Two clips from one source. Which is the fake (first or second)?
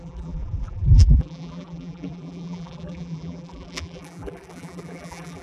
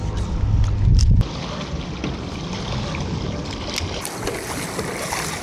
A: first